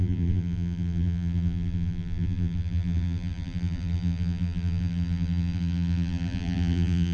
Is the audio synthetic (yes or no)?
yes